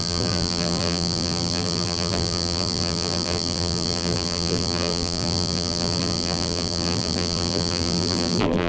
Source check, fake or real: fake